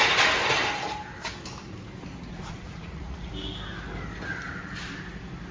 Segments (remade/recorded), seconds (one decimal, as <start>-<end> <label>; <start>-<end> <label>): 0.0-2.3 recorded; 2.3-3.3 remade; 3.3-5.5 recorded